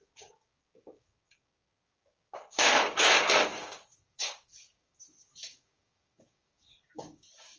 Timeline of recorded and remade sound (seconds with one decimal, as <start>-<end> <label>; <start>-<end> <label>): 0.0-7.6 remade